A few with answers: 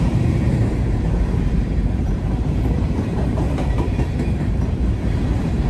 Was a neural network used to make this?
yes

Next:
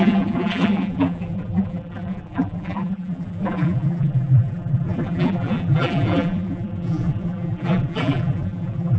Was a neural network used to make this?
yes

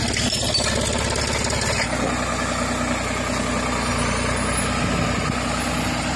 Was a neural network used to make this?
no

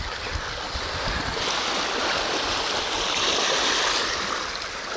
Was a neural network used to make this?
no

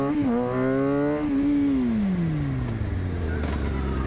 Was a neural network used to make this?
no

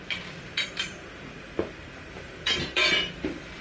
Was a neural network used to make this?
yes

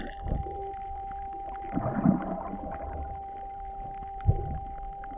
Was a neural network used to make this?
yes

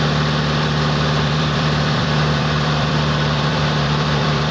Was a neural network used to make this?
yes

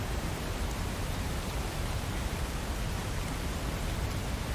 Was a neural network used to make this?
yes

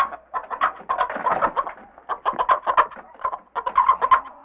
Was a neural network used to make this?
no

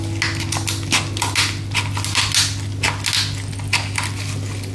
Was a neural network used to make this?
no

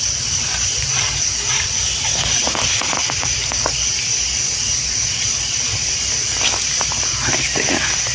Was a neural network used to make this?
no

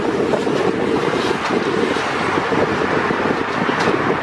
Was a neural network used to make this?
no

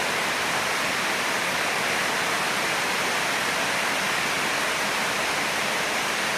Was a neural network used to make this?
no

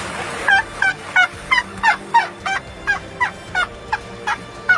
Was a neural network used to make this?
no